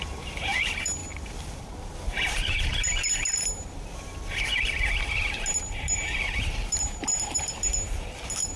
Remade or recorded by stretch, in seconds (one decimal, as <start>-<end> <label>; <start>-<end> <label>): 0.0-1.0 remade; 1.0-1.7 recorded; 1.7-2.7 remade; 2.7-5.2 recorded; 5.2-8.6 remade